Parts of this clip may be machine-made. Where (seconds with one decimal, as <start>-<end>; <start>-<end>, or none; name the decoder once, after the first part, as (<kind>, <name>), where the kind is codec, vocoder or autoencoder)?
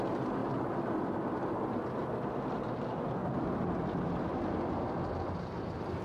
none